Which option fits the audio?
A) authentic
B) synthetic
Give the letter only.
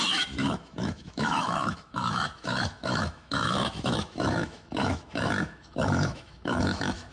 B